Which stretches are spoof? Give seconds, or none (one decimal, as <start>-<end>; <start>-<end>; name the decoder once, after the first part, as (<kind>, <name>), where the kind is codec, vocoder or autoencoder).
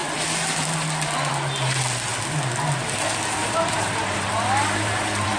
3.4-5.4 (vocoder, BigVGAN v2)